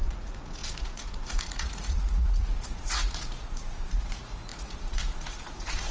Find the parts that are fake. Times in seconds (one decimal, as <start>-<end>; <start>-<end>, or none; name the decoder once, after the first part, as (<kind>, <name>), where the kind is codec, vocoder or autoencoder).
0.0-5.9 (vocoder, Vocos)